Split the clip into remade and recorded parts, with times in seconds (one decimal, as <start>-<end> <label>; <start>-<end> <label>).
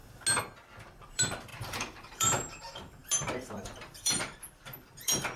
0.0-1.1 recorded; 1.1-5.4 remade